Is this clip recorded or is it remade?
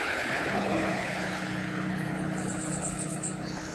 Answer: remade